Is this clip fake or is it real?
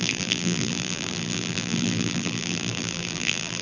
fake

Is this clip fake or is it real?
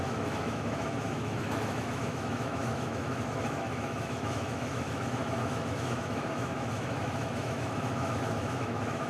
fake